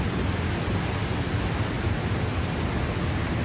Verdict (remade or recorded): recorded